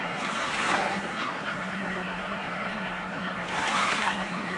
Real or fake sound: fake